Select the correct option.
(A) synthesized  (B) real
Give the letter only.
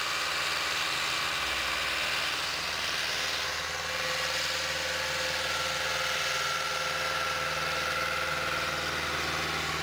B